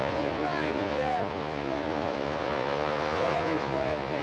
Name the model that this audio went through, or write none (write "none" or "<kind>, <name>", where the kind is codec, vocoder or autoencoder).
vocoder, Vocos